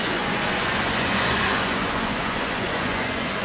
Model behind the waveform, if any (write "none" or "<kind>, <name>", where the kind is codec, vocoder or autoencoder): vocoder, Vocos